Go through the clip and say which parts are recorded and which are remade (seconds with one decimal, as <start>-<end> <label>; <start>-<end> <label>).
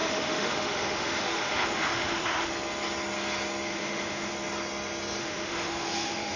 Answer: 0.0-2.5 remade; 2.5-3.7 recorded; 3.7-4.3 remade; 4.3-5.2 recorded; 5.2-6.4 remade